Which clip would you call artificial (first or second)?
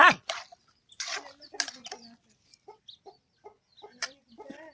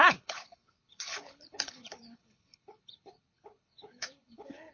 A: second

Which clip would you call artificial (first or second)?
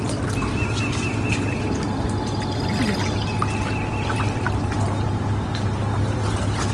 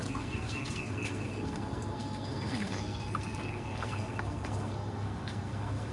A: second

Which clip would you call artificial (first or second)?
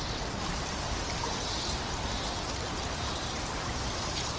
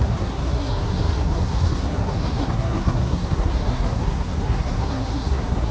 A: second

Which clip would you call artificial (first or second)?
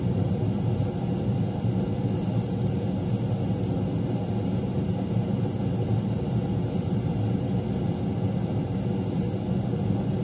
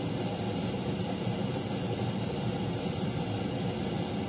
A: second